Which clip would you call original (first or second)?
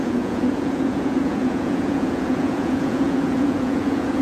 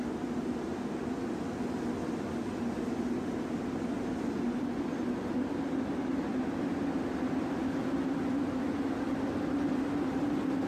second